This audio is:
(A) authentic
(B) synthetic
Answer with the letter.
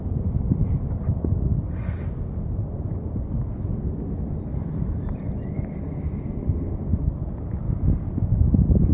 B